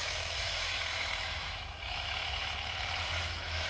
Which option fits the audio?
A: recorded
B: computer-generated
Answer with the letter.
B